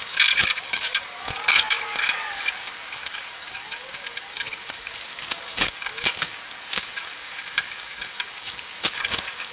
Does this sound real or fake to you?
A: fake